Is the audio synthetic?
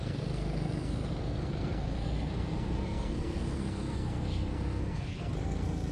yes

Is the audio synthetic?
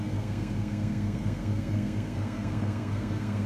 yes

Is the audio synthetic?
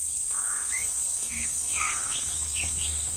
yes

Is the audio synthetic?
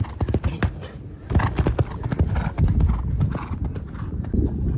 no